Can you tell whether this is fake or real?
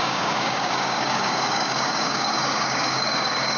fake